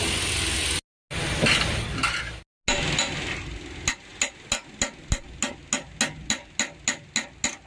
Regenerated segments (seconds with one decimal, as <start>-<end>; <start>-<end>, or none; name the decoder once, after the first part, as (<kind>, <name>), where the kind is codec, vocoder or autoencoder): none